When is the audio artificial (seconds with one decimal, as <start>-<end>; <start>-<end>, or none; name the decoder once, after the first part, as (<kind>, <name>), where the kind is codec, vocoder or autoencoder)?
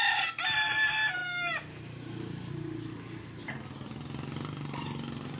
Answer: none